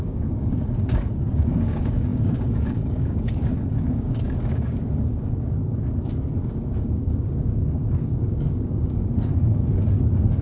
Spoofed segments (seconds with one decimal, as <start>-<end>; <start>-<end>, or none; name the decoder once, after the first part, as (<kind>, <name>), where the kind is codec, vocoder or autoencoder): 0.0-5.6 (codec, DAC); 6.8-10.4